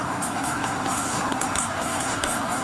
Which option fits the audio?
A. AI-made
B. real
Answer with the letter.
A